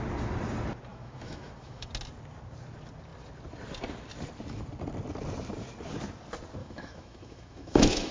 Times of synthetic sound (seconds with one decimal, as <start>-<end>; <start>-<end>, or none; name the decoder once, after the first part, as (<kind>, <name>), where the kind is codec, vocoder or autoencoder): 0.9-1.9 (autoencoder, DAC-VAE); 6.6-8.1